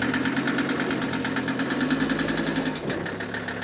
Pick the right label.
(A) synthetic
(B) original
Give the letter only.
B